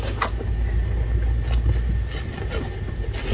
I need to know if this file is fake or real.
real